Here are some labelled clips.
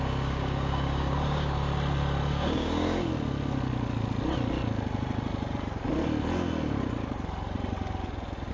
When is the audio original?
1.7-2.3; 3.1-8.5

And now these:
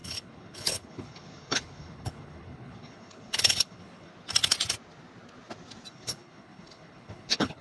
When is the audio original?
4.1-5.9

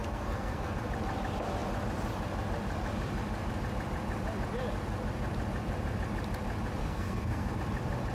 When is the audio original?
0.8-6.8; 7.6-8.1

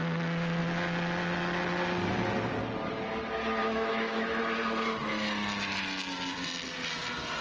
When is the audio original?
0.0-3.6; 4.4-7.4

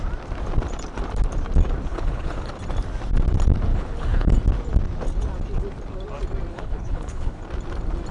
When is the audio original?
0.0-1.9; 2.5-3.7; 4.3-6.5; 7.4-8.1

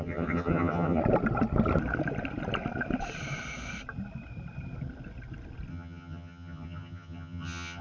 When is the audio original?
1.0-5.7

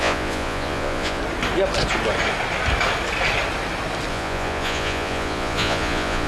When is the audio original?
1.2-4.1

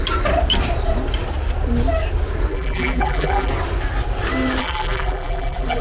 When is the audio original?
0.0-2.5; 3.5-4.6